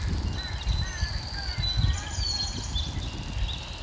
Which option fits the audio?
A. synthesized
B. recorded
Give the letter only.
B